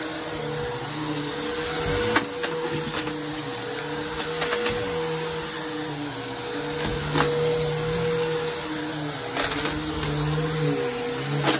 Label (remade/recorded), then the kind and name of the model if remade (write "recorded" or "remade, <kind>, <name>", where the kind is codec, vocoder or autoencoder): recorded